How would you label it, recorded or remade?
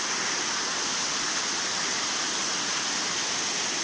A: recorded